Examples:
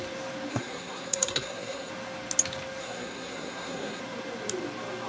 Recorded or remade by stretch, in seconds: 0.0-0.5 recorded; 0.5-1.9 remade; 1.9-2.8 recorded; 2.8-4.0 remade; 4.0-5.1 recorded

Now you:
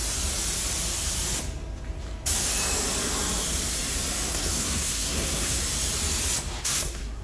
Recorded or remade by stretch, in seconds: 0.0-4.3 recorded; 4.3-5.6 remade; 5.6-6.6 recorded; 6.6-7.2 remade

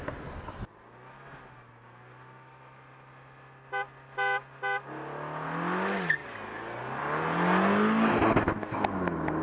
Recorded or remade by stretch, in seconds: 0.0-9.4 recorded